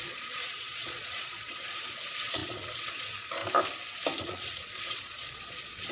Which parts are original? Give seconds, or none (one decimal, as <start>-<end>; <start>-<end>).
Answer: 3.4-4.2